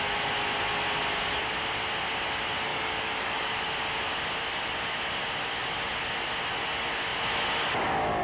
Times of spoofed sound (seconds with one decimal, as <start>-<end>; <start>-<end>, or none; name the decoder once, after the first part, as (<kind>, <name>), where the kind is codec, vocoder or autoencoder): 2.7-3.6 (codec, DAC)